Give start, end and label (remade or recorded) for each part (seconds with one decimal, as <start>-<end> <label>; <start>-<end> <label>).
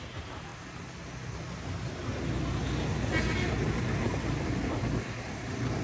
0.0-0.5 remade; 0.5-4.0 recorded; 4.0-5.8 remade